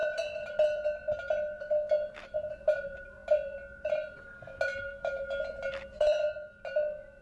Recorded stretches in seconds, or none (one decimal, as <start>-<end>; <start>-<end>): 0.0-7.2